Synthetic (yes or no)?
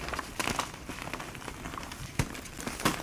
yes